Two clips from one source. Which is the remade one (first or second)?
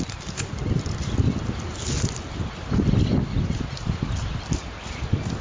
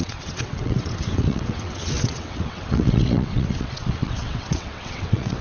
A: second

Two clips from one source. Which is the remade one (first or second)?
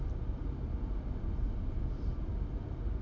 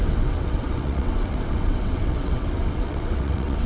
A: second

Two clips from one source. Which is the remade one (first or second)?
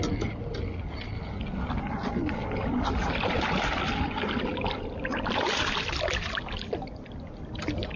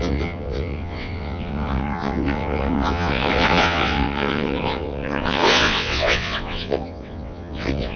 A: second